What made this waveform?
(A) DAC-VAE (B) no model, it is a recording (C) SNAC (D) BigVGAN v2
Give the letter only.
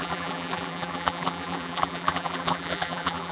D